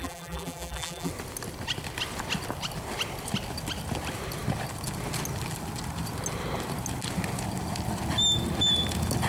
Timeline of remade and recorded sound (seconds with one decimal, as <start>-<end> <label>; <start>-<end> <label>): 0.0-1.1 remade; 1.1-9.3 recorded